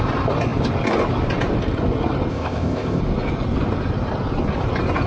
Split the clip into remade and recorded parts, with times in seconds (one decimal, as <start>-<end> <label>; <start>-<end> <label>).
0.0-2.3 recorded; 2.3-3.0 remade; 3.0-5.1 recorded